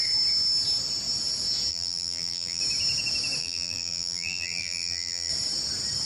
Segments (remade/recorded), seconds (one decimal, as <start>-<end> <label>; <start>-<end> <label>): 0.0-1.7 recorded; 1.7-2.6 remade; 2.6-3.4 recorded; 3.4-5.3 remade; 5.3-6.1 recorded